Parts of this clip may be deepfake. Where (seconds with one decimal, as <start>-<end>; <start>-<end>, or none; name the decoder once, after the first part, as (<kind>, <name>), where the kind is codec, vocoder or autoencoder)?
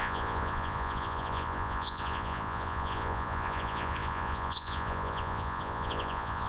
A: 0.0-6.5 (vocoder, Vocos)